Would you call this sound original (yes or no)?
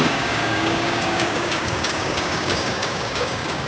no